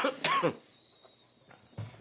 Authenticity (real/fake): real